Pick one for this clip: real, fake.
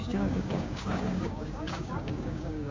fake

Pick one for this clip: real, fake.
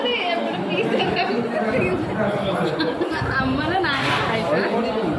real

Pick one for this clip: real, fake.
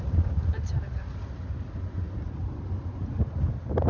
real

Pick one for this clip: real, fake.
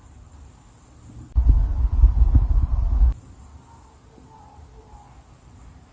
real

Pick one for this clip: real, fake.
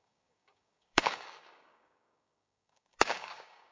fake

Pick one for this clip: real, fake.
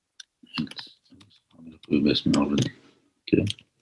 real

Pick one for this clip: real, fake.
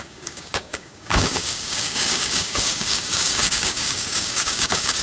fake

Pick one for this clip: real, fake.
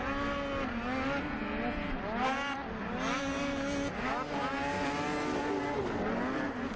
real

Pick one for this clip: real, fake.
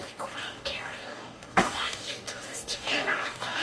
fake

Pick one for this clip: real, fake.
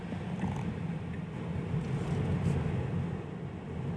real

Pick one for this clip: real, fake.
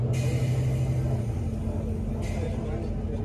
real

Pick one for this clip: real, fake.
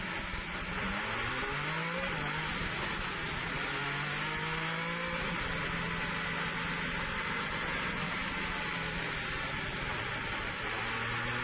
real